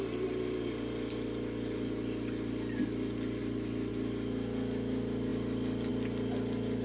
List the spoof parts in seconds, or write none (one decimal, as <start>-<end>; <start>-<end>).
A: 3.4-3.9